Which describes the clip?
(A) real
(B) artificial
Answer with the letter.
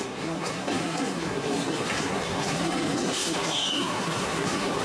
B